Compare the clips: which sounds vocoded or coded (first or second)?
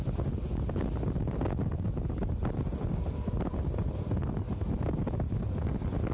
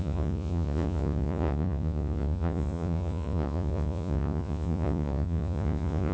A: second